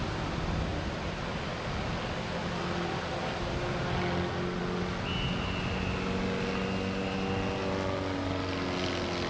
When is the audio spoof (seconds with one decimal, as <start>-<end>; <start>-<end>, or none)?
none